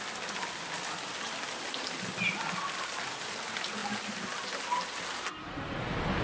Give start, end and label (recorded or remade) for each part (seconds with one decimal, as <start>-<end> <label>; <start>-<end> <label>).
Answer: 0.0-6.2 recorded